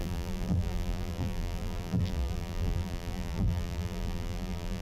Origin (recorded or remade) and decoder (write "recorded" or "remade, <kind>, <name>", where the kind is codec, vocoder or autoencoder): remade, vocoder, BigVGAN v2